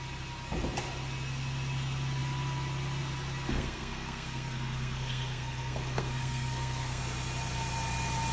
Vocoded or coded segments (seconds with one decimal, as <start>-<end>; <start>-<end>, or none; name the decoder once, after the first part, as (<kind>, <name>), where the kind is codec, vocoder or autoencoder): 3.5-7.0 (codec, SNAC)